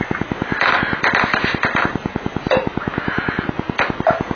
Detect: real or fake real